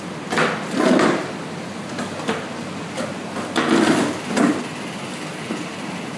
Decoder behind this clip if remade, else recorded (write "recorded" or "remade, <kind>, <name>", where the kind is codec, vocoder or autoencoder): recorded